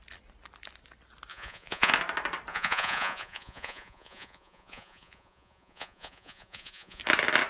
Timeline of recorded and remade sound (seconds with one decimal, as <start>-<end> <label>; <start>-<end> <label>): 0.0-1.3 recorded; 1.3-1.9 remade; 1.9-2.5 recorded; 2.5-7.0 remade; 7.0-7.5 recorded